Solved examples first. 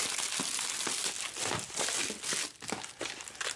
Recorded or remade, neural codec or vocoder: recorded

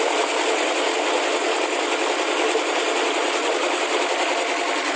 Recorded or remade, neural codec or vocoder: recorded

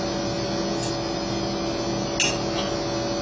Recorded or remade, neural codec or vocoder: recorded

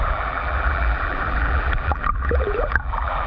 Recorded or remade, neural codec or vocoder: remade, vocoder, BigVGAN v2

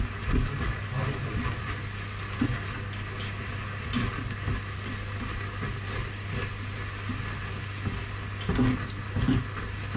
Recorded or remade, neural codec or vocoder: recorded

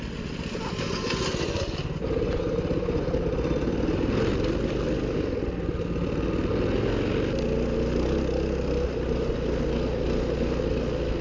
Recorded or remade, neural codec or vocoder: recorded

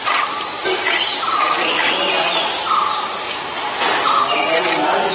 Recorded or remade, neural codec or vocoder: remade, vocoder, BigVGAN v2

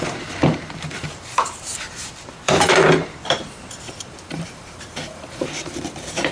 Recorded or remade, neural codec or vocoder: remade, vocoder, BigVGAN v2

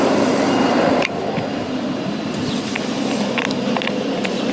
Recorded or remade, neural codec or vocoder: remade, vocoder, BigVGAN v2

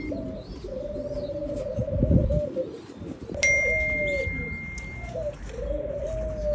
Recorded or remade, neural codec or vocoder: recorded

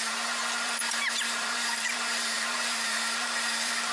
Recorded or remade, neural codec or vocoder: remade, vocoder, BigVGAN v2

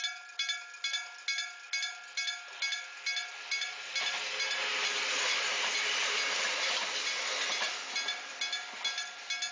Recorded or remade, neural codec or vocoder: recorded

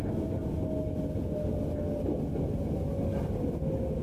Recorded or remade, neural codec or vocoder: recorded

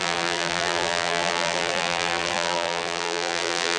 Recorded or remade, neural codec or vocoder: remade, vocoder, BigVGAN v2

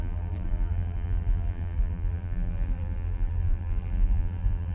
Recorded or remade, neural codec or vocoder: remade, vocoder, BigVGAN v2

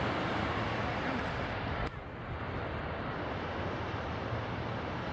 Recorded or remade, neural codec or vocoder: remade, vocoder, BigVGAN v2